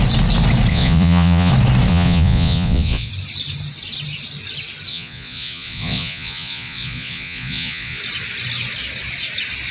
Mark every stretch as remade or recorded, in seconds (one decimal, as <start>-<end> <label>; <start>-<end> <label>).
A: 0.0-0.7 recorded; 0.7-1.5 remade; 1.5-1.9 recorded; 1.9-3.1 remade; 3.1-4.9 recorded; 4.9-8.0 remade; 8.0-9.7 recorded